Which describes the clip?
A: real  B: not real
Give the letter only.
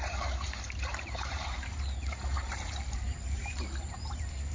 B